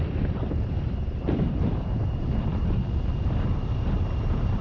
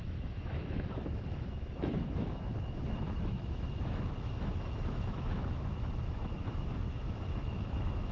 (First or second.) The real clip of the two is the first